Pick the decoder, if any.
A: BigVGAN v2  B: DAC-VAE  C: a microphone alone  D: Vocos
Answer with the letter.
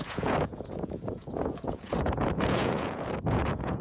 D